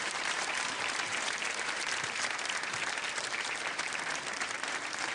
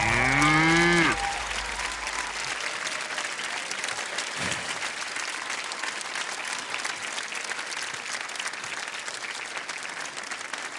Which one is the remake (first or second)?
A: first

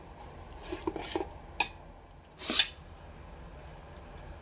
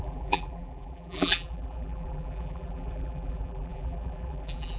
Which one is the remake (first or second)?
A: second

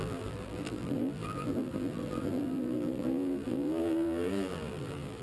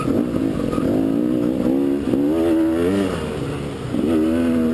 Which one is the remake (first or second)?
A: first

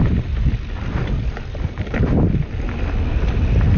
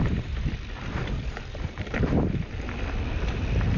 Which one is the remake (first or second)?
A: second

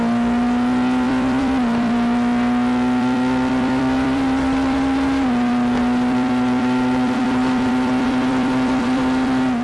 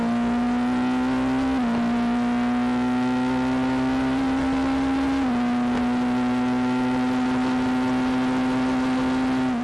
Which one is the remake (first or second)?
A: first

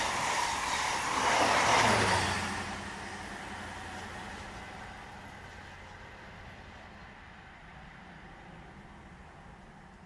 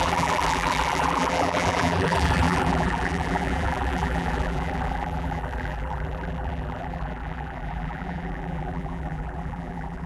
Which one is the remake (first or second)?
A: second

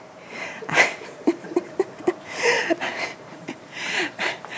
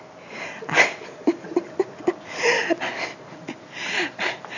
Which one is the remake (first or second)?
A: first